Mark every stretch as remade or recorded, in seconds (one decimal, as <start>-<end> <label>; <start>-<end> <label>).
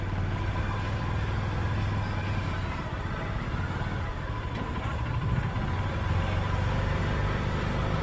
0.0-4.1 recorded; 4.1-5.4 remade; 5.4-8.0 recorded